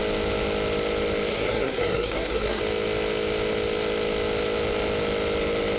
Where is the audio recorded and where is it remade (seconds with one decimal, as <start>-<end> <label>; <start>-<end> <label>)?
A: 0.0-1.3 recorded; 1.3-2.6 remade; 2.6-5.8 recorded